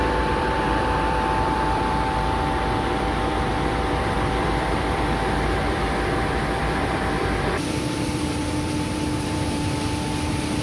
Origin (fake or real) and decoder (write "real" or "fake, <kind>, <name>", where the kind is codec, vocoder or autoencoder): fake, vocoder, BigVGAN v2